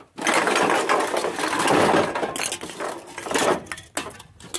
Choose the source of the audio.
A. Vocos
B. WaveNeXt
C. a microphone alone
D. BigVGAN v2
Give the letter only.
C